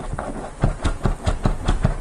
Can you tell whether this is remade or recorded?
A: recorded